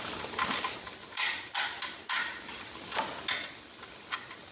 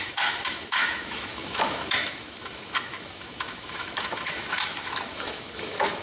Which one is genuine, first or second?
first